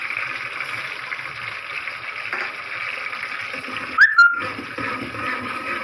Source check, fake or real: real